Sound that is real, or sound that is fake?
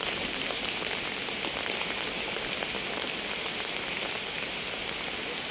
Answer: real